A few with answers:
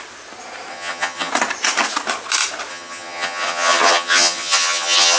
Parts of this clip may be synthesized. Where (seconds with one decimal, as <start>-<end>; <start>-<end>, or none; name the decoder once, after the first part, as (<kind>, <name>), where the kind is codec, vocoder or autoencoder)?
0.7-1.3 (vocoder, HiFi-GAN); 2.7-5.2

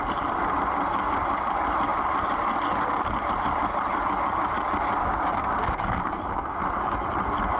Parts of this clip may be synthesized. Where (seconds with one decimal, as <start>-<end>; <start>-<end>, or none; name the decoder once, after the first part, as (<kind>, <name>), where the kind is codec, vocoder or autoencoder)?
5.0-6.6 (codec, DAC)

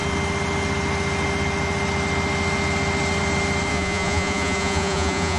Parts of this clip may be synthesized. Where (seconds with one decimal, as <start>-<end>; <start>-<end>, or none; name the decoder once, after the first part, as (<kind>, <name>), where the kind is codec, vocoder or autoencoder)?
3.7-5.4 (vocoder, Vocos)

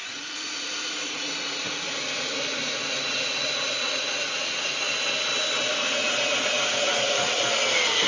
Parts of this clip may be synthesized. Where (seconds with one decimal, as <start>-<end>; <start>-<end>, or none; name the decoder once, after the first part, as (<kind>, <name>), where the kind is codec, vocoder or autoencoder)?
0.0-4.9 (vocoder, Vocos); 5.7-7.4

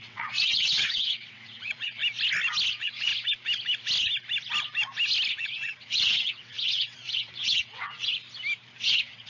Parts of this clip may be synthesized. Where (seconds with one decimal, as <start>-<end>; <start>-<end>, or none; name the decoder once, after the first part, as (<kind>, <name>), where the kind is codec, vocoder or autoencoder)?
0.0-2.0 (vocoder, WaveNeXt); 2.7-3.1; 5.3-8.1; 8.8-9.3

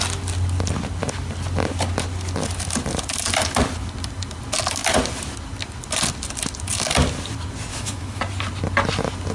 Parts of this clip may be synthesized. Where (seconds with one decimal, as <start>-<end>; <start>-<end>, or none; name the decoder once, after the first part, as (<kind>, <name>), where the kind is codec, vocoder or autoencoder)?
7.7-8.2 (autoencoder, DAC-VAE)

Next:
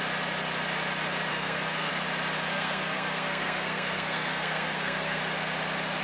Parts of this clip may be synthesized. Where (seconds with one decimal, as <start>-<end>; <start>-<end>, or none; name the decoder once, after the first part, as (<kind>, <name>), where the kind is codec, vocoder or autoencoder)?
1.3-1.9 (codec, SNAC); 2.5-5.2